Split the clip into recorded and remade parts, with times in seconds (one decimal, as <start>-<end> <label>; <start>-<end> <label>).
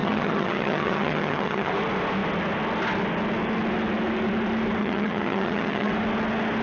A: 0.0-1.7 remade; 1.7-4.8 recorded; 4.8-5.9 remade; 5.9-6.6 recorded